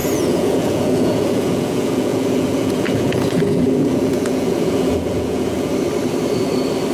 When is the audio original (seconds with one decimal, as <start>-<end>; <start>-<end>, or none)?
5.7-6.9